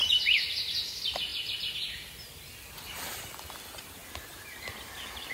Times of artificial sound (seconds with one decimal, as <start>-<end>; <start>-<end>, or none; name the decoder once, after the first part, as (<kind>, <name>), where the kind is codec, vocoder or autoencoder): none